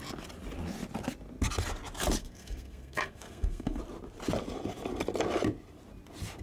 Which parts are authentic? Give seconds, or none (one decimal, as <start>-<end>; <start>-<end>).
0.0-2.2; 3.8-6.4